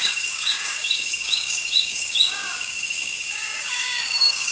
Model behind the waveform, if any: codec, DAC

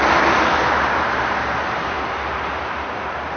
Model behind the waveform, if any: none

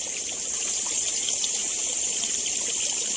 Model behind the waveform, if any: none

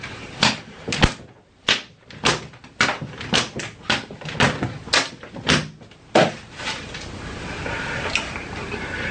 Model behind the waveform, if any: none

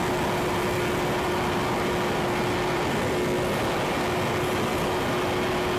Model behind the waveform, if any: none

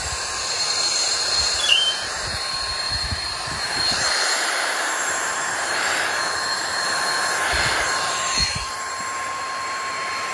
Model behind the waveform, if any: vocoder, BigVGAN v2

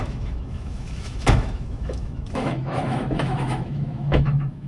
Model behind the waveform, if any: autoencoder, DAC-VAE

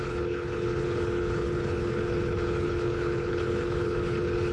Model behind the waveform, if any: codec, HILCodec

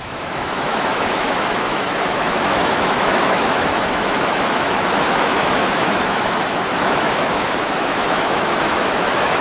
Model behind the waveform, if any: autoencoder, DAC-VAE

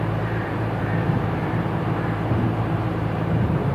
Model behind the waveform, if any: vocoder, BigVGAN v2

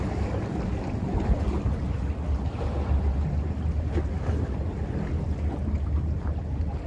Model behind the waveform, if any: none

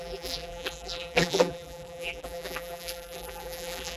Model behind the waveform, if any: vocoder, BigVGAN v2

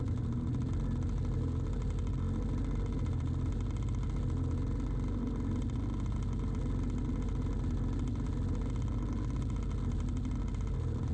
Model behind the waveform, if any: none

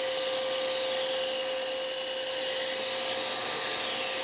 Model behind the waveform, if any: none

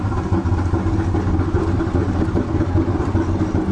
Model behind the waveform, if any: none